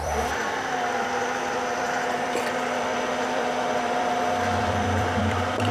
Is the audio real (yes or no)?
no